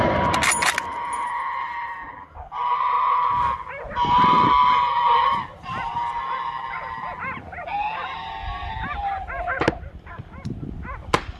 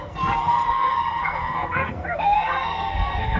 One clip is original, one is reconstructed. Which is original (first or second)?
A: first